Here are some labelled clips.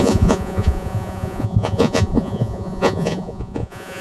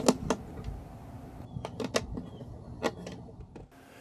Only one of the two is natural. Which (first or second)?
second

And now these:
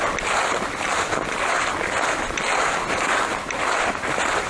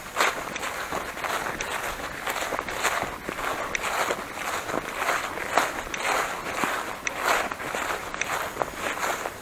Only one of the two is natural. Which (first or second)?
second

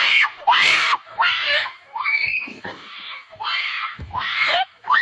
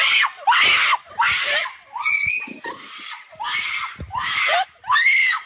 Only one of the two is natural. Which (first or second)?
second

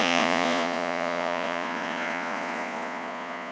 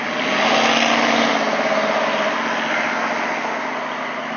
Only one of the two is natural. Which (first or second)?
second